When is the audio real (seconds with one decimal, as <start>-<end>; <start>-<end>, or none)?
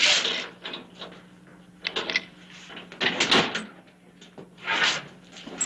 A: 0.0-5.7